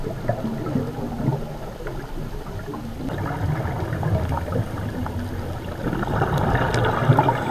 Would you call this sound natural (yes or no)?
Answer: yes